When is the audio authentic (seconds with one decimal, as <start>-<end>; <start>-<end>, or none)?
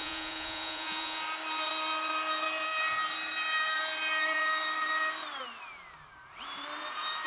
1.2-7.3